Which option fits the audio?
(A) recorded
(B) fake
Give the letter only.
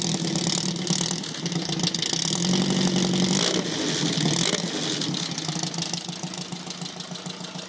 A